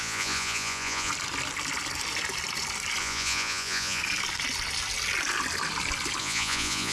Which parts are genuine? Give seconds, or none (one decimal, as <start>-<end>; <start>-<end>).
1.1-3.0; 4.0-6.2